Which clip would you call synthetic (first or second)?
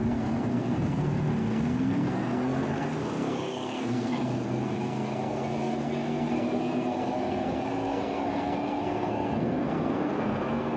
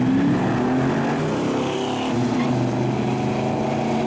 first